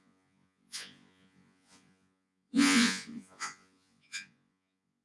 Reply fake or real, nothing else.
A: fake